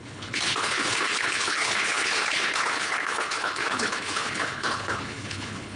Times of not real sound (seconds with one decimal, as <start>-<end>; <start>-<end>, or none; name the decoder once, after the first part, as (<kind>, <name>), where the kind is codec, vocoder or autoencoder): 0.0-5.8 (codec, HILCodec)